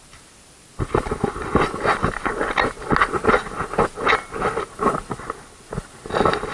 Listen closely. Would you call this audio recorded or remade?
recorded